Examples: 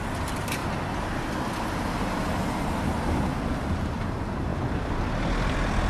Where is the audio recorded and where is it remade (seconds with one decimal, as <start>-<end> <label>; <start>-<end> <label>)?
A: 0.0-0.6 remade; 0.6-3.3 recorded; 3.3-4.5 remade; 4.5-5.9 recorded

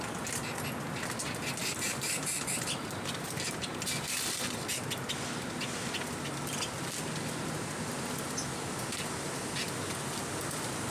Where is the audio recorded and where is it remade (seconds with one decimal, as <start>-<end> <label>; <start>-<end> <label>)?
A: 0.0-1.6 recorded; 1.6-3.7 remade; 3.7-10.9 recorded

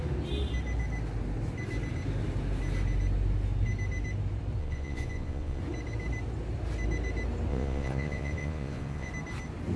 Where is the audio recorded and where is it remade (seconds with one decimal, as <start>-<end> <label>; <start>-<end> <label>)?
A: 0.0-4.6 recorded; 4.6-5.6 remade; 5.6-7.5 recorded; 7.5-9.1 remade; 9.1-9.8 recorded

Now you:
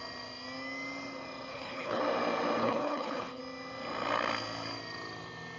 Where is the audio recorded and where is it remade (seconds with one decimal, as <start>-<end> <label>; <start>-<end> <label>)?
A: 0.0-1.5 recorded; 1.5-2.0 remade; 2.0-2.6 recorded; 2.6-3.4 remade; 3.4-5.6 recorded

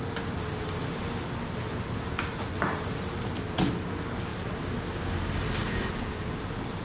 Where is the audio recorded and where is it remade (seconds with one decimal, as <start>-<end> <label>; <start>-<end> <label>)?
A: 0.0-6.8 recorded

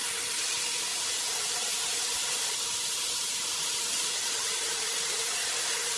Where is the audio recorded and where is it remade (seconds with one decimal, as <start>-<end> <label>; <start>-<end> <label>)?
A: 0.0-0.9 recorded; 0.9-4.5 remade; 4.5-6.0 recorded

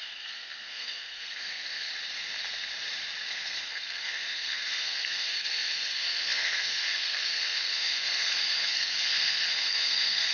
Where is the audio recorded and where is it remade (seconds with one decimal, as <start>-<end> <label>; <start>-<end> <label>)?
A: 0.0-1.9 remade; 1.9-3.3 recorded; 3.3-10.3 remade

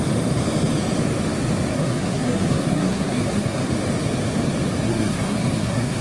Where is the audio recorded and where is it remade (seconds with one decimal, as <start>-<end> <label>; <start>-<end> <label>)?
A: 0.0-1.7 recorded; 1.7-3.7 remade; 3.7-4.9 recorded; 4.9-6.0 remade